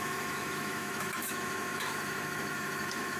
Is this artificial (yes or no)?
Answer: yes